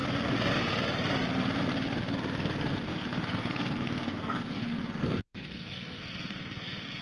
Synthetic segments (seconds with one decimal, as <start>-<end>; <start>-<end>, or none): 2.9-7.0